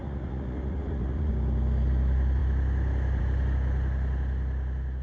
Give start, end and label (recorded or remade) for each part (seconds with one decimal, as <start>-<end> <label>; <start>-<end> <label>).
0.0-1.3 remade; 1.3-5.0 recorded